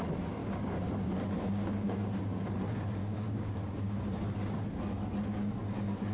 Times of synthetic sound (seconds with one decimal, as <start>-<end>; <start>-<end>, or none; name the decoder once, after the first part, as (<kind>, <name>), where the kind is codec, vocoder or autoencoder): 0.4-0.9 (codec, DAC); 1.6-2.5; 3.0-4.2